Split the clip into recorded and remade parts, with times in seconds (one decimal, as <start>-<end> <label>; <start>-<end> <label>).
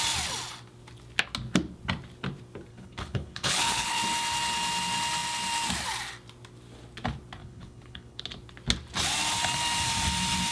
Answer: 0.0-2.7 recorded; 2.7-4.0 remade; 4.0-7.4 recorded; 7.4-8.2 remade; 8.2-10.5 recorded